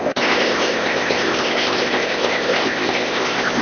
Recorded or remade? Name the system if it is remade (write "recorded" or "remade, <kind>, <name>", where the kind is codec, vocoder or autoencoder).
remade, codec, ZipCodec